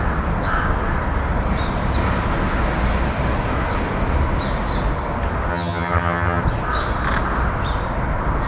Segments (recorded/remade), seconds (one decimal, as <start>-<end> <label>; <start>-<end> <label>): 0.0-5.5 recorded; 5.5-6.4 remade; 6.4-8.5 recorded